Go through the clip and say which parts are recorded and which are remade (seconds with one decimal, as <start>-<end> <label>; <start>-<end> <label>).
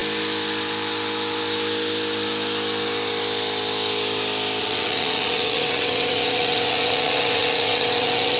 0.0-4.6 recorded; 4.6-8.4 remade